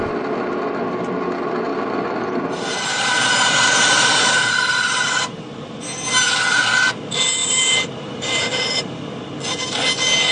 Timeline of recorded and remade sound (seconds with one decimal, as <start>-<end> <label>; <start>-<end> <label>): 0.0-1.7 recorded; 1.7-5.8 remade; 5.8-7.4 recorded; 7.4-8.9 remade; 8.9-10.3 recorded